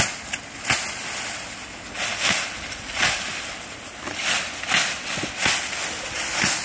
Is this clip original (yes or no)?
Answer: yes